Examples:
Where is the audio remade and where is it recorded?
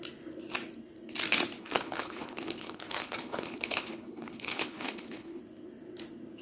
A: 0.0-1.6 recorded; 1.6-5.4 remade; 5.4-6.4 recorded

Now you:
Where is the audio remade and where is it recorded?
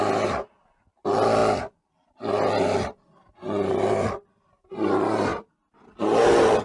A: 0.0-6.6 recorded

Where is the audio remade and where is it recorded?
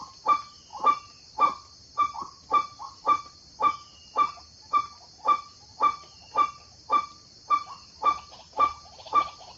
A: 0.0-9.6 recorded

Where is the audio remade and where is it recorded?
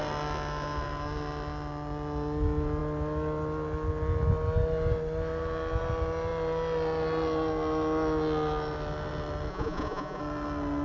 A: 0.0-9.5 recorded; 9.5-10.2 remade; 10.2-10.8 recorded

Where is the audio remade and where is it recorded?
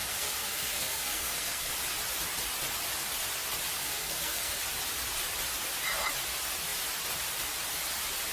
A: 0.0-1.7 remade; 1.7-3.8 recorded; 3.8-4.6 remade; 4.6-8.3 recorded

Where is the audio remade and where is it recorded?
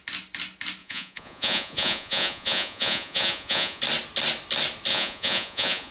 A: 0.0-0.8 recorded; 0.8-3.8 remade; 3.8-4.9 recorded; 4.9-5.9 remade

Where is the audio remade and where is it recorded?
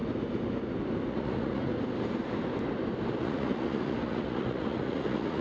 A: 0.0-1.1 recorded; 1.1-1.7 remade; 1.7-3.2 recorded; 3.2-5.4 remade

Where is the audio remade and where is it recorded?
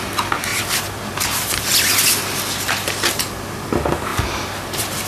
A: 0.0-0.5 recorded; 0.5-1.5 remade; 1.5-4.1 recorded; 4.1-5.1 remade